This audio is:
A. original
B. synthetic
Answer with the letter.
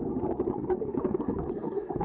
B